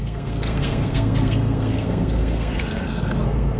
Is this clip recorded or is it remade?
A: remade